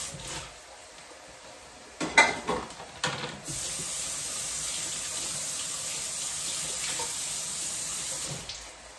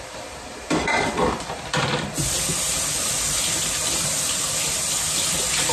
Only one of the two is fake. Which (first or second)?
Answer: second